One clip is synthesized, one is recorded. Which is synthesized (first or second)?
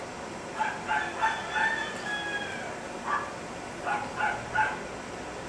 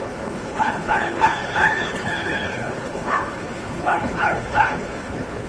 second